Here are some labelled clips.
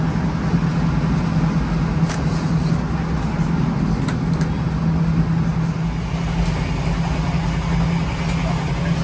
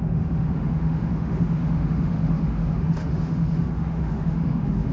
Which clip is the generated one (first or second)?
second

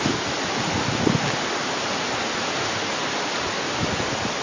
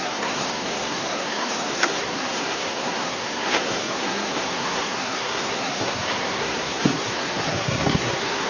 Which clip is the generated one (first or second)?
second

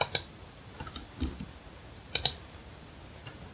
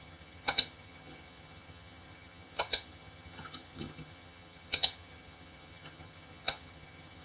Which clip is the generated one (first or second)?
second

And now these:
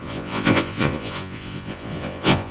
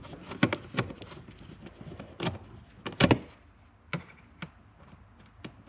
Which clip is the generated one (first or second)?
first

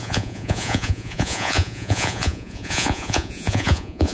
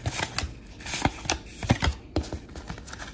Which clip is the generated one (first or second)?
first